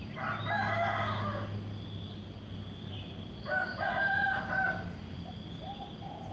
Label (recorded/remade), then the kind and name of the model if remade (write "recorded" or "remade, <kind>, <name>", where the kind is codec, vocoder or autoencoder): recorded